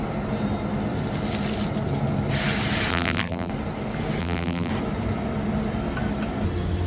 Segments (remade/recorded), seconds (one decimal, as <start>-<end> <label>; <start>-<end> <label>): 0.0-2.9 recorded; 2.9-3.5 remade; 3.5-4.2 recorded; 4.2-4.7 remade; 4.7-6.9 recorded